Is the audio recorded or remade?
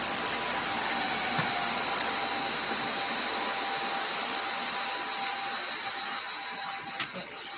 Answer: recorded